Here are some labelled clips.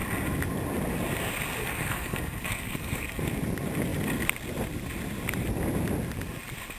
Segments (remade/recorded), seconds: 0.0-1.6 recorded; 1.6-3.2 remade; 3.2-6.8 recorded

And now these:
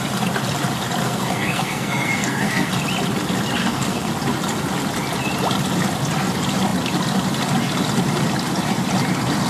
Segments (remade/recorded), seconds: 0.0-1.0 recorded; 1.0-2.7 remade; 2.7-3.6 recorded; 3.6-4.1 remade; 4.1-9.5 recorded

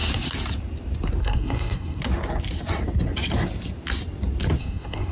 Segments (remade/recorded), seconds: 0.0-1.2 recorded; 1.2-2.0 remade; 2.0-4.6 recorded; 4.6-5.1 remade

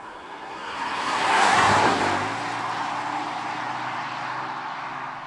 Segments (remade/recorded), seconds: 0.0-2.0 remade; 2.0-5.3 recorded

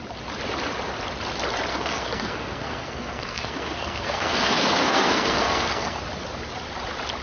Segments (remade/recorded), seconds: 0.0-1.7 recorded; 1.7-6.0 remade; 6.0-7.2 recorded

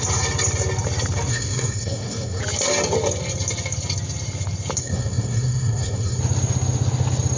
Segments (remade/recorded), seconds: 0.0-1.3 recorded; 1.3-2.4 remade; 2.4-4.8 recorded; 4.8-6.2 remade; 6.2-7.4 recorded

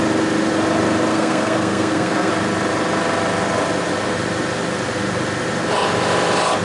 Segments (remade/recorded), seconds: 0.0-1.1 recorded; 1.1-2.3 remade; 2.3-6.6 recorded